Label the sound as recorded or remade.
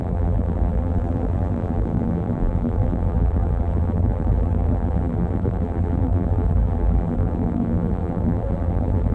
remade